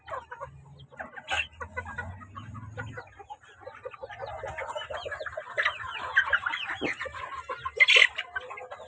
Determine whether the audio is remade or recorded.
recorded